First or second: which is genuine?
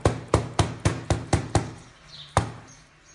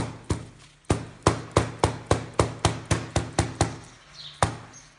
second